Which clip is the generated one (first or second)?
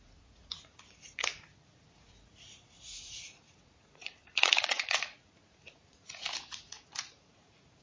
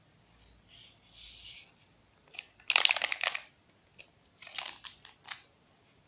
first